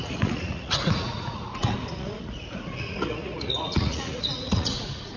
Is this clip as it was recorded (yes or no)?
no